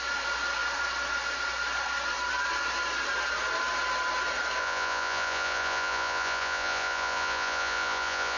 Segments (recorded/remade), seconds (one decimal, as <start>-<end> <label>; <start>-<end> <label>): 0.0-4.6 recorded; 4.6-8.4 remade